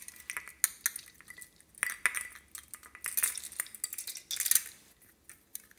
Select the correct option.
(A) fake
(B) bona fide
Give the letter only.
B